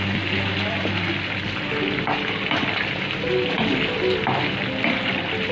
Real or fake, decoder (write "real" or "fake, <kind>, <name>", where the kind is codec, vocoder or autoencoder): fake, vocoder, BigVGAN v2